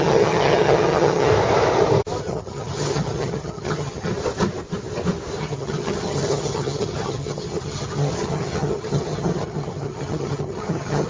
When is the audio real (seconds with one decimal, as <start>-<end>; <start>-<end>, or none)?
1.3-2.2; 4.1-5.4